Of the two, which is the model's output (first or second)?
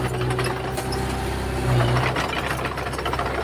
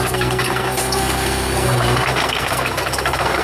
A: second